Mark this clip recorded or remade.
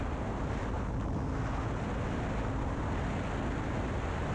recorded